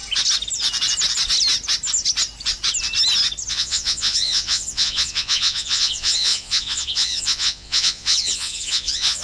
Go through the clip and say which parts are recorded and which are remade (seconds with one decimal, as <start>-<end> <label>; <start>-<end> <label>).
0.0-3.5 recorded; 3.5-9.2 remade